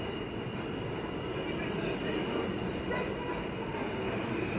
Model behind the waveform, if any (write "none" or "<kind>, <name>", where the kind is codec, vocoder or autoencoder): none